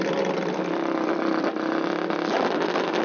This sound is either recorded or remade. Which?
recorded